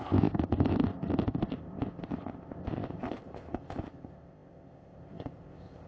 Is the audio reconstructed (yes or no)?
yes